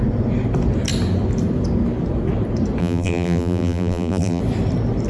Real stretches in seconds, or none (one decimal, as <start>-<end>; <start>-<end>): 0.0-2.8; 4.4-5.1

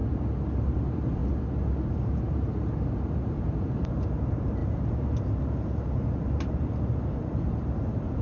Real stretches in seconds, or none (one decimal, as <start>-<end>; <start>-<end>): 0.0-0.6; 1.2-1.9

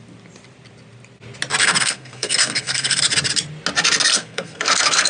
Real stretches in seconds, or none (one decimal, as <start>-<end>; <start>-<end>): 0.0-1.6; 3.0-4.1

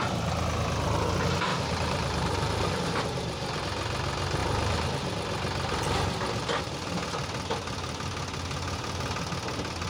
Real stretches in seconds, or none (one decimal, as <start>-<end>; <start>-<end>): 0.0-1.5; 3.6-9.9

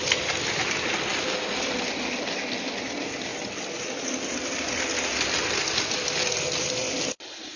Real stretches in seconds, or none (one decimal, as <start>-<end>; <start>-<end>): 0.0-7.6